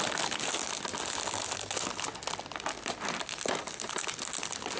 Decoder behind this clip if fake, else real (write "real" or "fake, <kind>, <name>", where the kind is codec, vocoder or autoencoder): real